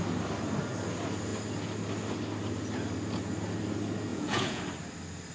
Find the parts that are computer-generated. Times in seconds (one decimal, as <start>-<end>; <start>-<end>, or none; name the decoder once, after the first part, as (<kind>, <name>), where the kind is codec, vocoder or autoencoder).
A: 4.1-4.6 (vocoder, Vocos)